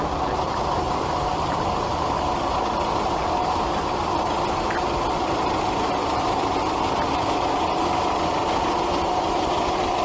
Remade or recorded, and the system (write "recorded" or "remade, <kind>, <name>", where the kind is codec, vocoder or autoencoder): recorded